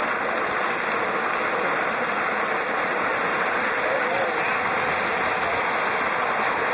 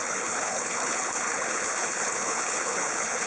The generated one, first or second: second